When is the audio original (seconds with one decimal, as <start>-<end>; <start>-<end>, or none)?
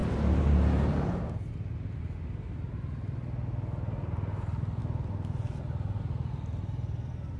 0.0-7.4